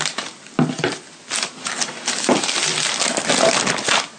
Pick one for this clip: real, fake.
real